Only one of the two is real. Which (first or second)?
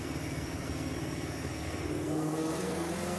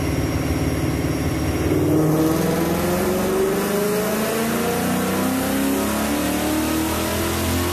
second